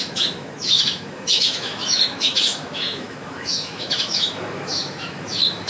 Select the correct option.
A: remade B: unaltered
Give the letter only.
A